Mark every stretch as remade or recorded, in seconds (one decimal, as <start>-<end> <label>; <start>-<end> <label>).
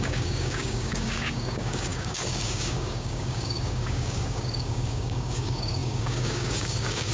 0.0-7.1 remade